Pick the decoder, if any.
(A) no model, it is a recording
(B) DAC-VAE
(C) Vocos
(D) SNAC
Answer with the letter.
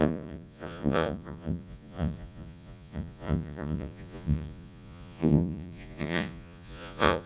C